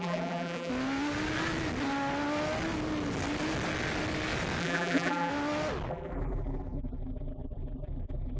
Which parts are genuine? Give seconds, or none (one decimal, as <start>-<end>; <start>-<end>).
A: 0.7-4.6; 5.3-5.9